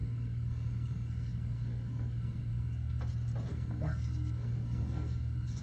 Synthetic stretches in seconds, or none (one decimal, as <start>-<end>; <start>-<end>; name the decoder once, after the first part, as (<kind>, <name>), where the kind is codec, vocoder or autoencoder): 0.0-3.0 (codec, SNAC); 3.5-5.6